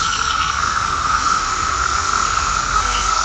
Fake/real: fake